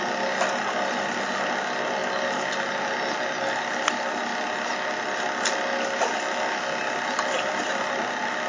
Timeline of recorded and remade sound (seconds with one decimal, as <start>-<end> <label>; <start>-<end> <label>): 0.0-8.5 recorded